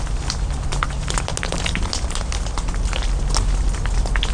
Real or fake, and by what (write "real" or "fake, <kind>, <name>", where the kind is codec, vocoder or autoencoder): real